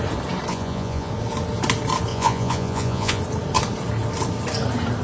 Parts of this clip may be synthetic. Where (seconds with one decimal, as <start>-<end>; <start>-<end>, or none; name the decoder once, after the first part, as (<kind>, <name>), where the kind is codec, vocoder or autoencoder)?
0.5-1.1 (vocoder, Vocos); 2.1-3.2